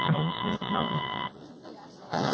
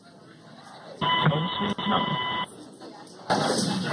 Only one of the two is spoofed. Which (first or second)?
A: first